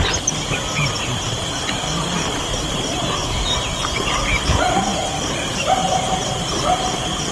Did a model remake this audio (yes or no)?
yes